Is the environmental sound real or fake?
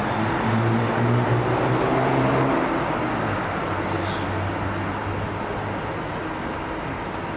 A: real